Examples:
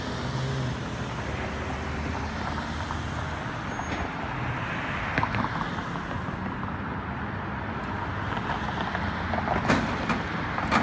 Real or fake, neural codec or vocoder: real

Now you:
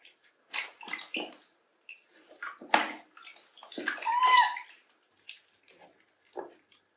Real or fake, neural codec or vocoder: real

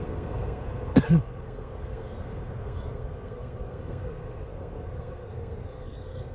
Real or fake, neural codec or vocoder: fake, codec, SNAC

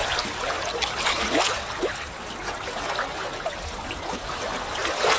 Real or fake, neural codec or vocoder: real